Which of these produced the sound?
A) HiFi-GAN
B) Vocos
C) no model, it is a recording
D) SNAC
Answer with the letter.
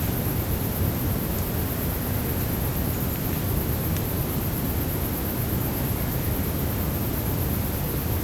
C